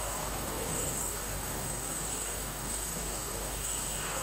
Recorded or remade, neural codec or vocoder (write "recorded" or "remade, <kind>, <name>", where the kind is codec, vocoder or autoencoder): remade, codec, DAC